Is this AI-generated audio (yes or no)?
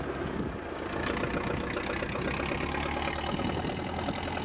no